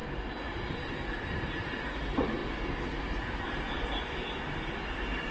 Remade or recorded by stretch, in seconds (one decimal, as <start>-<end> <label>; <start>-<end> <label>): 0.0-0.7 recorded; 0.7-2.4 remade; 2.4-5.3 recorded